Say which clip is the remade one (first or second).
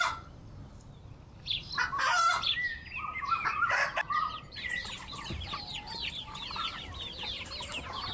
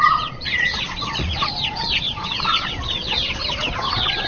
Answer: second